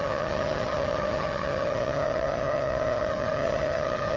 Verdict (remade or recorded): remade